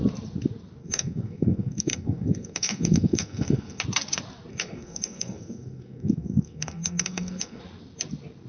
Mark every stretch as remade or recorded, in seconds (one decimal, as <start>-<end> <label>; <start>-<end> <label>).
0.0-0.8 recorded; 0.8-3.8 remade; 3.8-4.5 recorded; 4.5-7.6 remade; 7.6-8.5 recorded